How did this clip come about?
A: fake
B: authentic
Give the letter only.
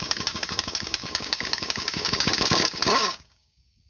A